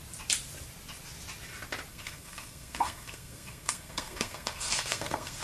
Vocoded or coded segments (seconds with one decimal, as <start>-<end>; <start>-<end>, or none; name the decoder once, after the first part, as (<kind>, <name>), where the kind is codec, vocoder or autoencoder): 1.9-5.4 (codec, SNAC)